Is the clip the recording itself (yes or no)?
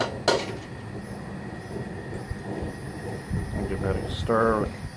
yes